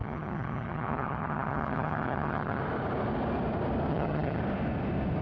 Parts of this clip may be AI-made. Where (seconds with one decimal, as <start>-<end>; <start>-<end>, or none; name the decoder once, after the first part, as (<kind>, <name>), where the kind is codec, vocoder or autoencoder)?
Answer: 0.0-2.6 (vocoder, HiFi-GAN); 3.9-4.4